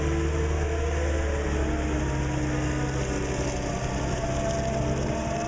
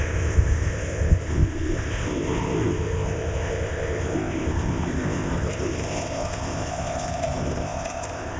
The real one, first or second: first